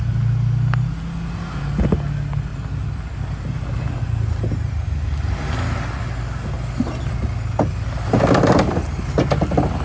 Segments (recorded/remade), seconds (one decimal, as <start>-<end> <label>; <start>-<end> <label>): 0.0-2.5 recorded; 2.5-3.0 remade; 3.0-9.8 recorded